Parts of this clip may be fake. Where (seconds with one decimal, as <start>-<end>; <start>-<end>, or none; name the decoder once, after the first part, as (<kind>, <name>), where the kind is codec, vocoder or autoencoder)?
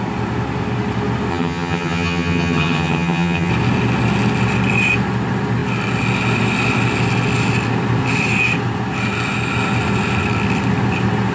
1.3-3.5 (vocoder, HiFi-GAN)